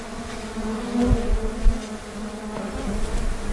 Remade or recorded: recorded